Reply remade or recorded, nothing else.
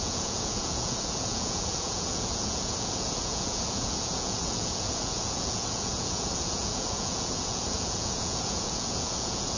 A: remade